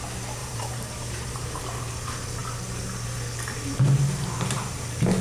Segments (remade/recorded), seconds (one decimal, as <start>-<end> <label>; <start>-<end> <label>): 0.0-0.4 recorded; 0.4-1.6 remade; 1.6-5.2 recorded